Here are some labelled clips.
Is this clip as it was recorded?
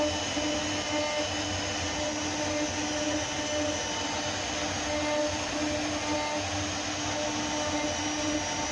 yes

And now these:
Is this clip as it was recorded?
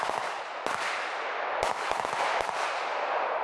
yes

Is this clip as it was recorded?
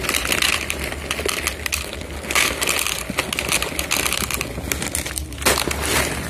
yes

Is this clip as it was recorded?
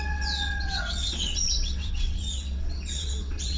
no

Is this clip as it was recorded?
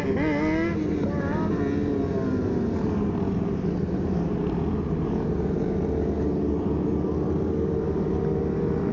yes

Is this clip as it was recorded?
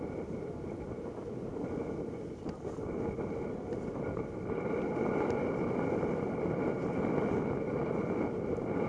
yes